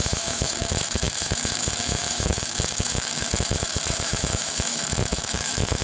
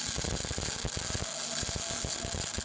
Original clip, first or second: second